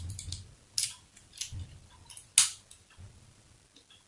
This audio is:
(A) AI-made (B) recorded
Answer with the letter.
B